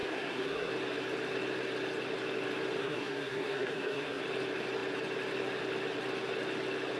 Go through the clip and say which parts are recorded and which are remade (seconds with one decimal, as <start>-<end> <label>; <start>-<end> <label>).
0.0-0.7 remade; 0.7-2.8 recorded; 2.8-4.2 remade; 4.2-7.0 recorded